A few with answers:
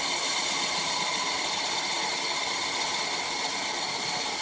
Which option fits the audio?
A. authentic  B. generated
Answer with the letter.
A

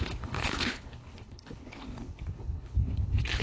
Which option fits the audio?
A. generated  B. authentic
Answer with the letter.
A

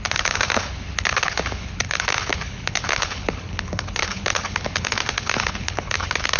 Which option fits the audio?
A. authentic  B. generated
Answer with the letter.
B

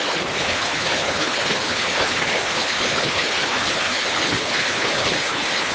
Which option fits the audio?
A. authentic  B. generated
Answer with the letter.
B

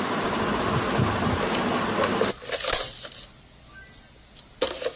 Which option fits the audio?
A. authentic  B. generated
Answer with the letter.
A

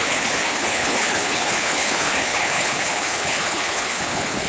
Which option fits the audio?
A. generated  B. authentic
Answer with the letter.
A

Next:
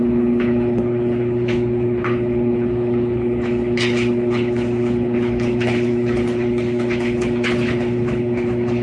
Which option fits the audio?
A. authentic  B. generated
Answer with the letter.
B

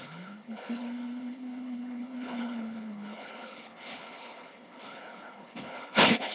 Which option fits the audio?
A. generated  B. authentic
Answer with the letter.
A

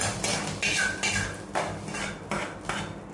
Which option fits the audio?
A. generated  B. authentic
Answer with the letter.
B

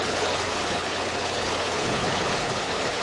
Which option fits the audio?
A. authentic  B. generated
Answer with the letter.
B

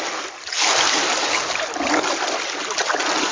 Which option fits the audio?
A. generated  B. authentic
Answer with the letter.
B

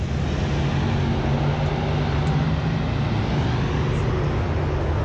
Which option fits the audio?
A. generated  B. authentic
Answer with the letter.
B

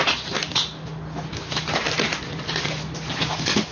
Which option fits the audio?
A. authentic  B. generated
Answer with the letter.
A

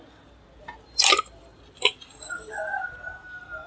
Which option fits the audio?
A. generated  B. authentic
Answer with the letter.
B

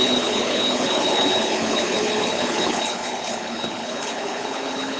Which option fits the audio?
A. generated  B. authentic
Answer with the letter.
A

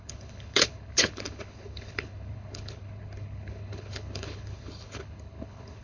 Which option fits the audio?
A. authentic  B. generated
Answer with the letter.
B